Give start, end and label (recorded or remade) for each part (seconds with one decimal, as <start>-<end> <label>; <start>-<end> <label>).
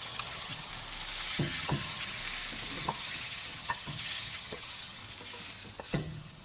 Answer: 0.0-0.7 remade; 0.7-1.3 recorded; 1.3-2.2 remade; 2.2-2.8 recorded; 2.8-5.0 remade; 5.0-5.8 recorded; 5.8-6.4 remade